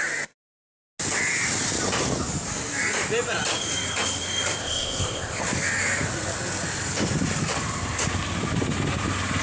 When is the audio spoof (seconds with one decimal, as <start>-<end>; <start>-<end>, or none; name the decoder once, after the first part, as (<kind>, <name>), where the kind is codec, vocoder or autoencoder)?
4.6-5.4 (codec, ZipCodec)